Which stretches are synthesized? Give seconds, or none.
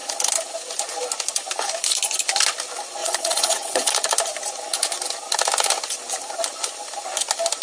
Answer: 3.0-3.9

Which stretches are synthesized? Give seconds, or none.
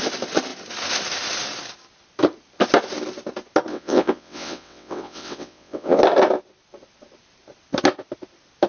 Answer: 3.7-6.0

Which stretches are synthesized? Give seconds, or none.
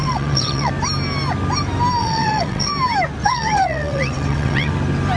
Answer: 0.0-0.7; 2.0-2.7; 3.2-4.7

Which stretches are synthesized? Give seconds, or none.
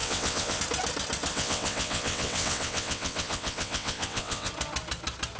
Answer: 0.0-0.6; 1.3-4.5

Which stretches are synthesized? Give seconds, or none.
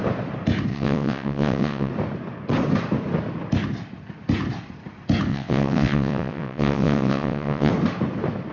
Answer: 0.7-1.9; 5.3-7.7